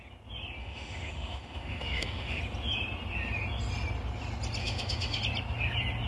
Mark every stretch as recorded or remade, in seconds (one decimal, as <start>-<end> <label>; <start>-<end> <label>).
0.0-0.6 recorded; 0.6-2.4 remade; 2.4-4.6 recorded; 4.6-5.2 remade; 5.2-6.1 recorded